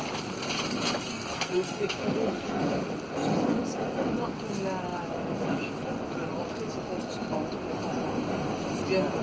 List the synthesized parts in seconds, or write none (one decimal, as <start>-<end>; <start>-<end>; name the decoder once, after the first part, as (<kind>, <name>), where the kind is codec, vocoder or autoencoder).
1.1-2.6 (codec, SNAC)